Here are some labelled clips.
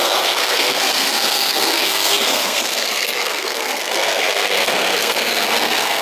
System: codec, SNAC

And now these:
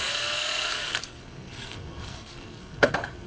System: codec, SNAC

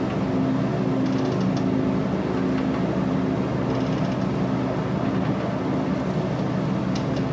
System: none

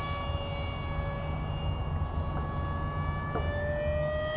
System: none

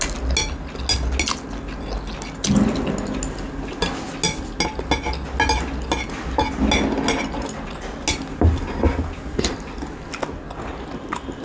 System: none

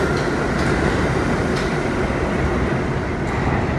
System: none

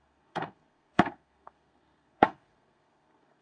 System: codec, SNAC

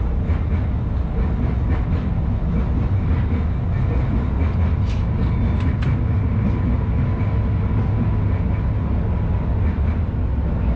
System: none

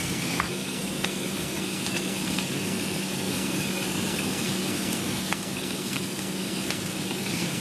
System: codec, SNAC